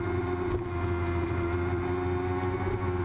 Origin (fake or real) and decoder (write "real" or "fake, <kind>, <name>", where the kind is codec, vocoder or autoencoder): real